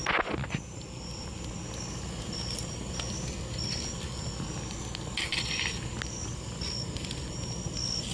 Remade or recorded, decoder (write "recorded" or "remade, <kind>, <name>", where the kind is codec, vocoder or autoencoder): recorded